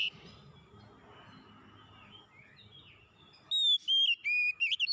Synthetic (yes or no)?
no